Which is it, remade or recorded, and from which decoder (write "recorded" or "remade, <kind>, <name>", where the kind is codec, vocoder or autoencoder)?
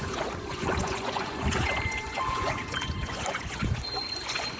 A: remade, vocoder, Vocos